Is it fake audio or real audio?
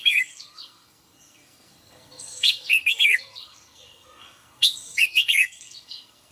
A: fake